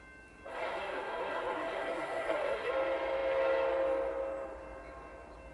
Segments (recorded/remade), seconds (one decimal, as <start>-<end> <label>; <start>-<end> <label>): 0.0-0.5 recorded; 0.5-2.7 remade; 2.7-5.5 recorded